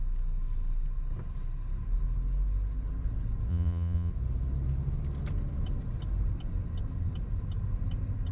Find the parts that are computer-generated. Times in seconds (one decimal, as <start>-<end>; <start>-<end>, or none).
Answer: 3.5-4.1